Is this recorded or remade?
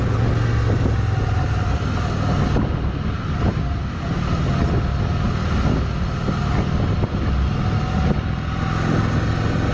recorded